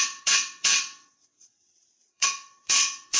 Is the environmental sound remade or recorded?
remade